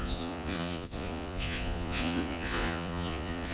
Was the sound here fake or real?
fake